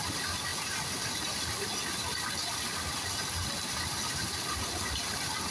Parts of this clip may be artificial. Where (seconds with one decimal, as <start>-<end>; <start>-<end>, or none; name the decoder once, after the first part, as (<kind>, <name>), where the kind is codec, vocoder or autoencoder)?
none